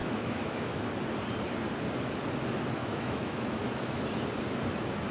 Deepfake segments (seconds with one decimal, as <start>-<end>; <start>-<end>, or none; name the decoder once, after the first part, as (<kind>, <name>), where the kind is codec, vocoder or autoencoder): 0.0-0.9 (autoencoder, DAC-VAE); 2.8-4.0